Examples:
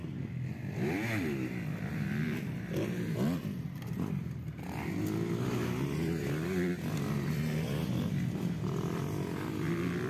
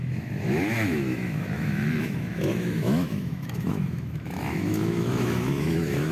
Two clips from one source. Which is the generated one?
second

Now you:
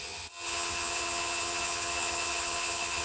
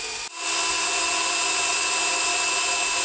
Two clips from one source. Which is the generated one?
first